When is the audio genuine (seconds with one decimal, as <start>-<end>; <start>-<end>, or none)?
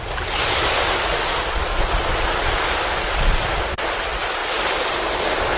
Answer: 0.0-5.6